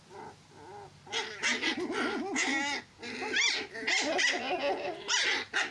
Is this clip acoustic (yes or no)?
yes